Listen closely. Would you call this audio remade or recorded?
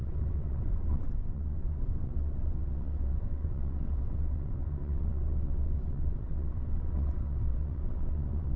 remade